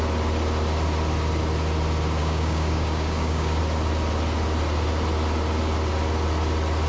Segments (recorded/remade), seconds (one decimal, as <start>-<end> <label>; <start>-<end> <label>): 0.0-2.2 recorded; 2.2-3.6 remade; 3.6-6.9 recorded